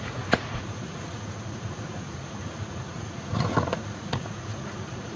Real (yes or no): no